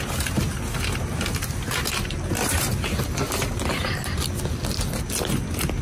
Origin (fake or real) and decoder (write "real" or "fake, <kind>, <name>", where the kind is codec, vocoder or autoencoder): real